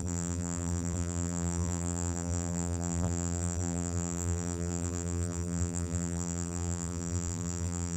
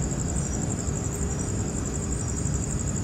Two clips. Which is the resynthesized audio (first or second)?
first